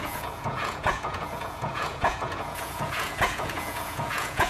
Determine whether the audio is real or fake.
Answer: fake